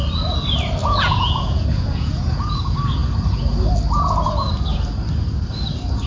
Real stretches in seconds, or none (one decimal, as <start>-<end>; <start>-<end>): 0.0-0.8; 2.6-6.1

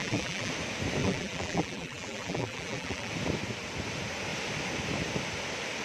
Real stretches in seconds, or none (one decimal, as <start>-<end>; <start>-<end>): 0.5-1.0; 3.1-5.8

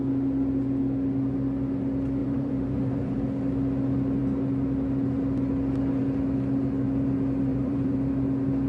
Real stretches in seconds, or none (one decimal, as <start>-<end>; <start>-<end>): 0.0-2.2; 3.2-7.5; 8.1-8.7

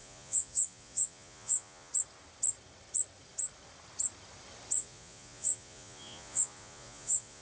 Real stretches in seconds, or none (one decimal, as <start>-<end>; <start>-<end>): 1.9-4.8

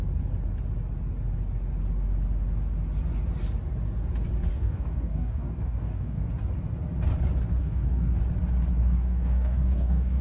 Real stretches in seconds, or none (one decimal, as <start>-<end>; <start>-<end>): 0.0-4.5; 6.3-7.6; 8.2-8.8